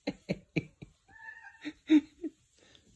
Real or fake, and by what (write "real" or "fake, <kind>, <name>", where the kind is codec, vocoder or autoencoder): real